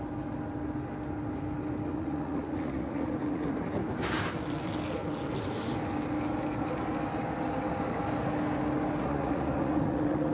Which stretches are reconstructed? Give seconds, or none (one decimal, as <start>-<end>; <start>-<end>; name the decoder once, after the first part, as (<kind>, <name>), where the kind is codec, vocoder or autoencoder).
1.9-3.5 (vocoder, Vocos); 9.0-10.3